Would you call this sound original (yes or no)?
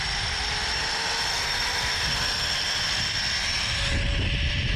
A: yes